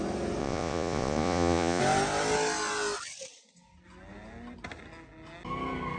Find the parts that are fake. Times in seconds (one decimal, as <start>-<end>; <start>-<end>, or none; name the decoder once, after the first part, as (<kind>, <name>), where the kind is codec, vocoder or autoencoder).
0.4-1.8 (vocoder, Vocos)